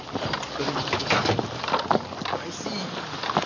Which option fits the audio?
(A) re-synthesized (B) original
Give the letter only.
B